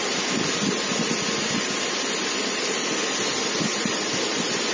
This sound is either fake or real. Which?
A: real